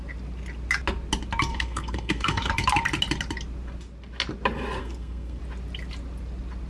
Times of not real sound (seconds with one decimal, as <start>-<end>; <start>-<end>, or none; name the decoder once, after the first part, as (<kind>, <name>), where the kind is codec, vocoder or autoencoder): 1.5-2.5 (codec, SNAC); 4.8-5.4